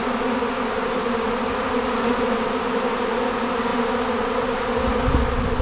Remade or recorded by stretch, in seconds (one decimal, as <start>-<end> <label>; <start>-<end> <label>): 0.0-5.6 recorded